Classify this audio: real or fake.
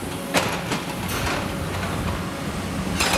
real